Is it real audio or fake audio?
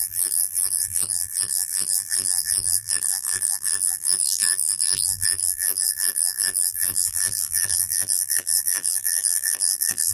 fake